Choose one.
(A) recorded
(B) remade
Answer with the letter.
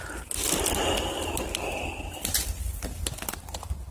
A